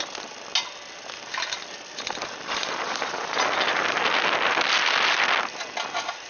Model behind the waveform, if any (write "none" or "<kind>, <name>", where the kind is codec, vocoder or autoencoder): none